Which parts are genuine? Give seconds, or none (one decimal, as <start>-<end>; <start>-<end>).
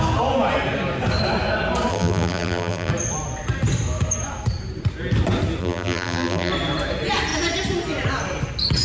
0.0-1.9; 2.9-5.6; 6.5-8.8